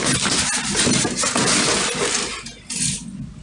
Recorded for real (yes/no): yes